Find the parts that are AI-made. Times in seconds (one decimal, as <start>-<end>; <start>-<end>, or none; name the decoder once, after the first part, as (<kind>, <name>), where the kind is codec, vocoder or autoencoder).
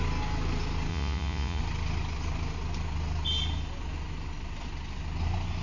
0.9-1.6 (vocoder, Vocos)